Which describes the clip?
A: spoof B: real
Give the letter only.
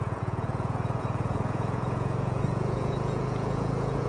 A